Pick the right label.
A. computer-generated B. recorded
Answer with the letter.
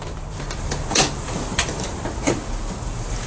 A